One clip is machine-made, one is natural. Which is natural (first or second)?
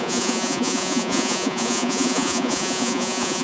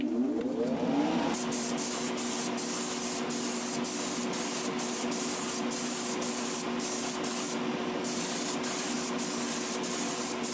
second